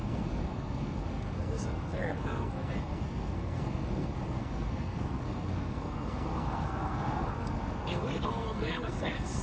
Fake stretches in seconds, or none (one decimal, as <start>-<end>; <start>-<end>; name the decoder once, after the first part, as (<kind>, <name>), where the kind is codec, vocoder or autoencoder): 0.0-9.4 (codec, SNAC)